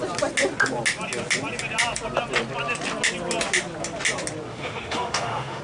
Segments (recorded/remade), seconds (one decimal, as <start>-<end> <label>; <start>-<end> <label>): 0.0-4.5 recorded; 4.5-5.6 remade